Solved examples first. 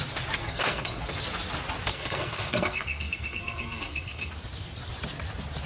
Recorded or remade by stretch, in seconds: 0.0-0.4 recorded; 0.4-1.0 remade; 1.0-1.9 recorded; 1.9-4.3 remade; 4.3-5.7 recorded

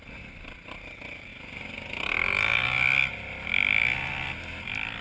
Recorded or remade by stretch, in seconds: 0.0-5.0 recorded

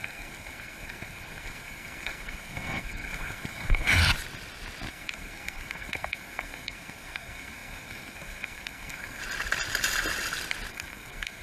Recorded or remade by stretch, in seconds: 0.0-4.0 remade; 4.0-4.9 recorded; 4.9-9.2 remade; 9.2-10.7 recorded; 10.7-11.4 remade

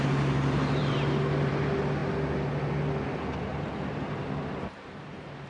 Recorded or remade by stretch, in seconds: 0.0-5.5 recorded

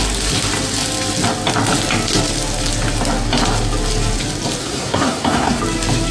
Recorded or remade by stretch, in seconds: 0.0-4.6 recorded; 4.6-5.6 remade; 5.6-6.1 recorded